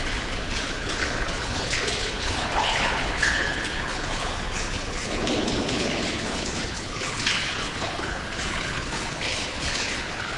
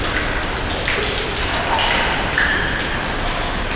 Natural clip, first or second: second